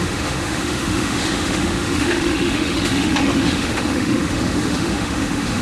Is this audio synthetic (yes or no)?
yes